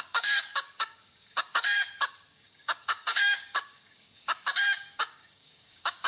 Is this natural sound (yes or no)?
no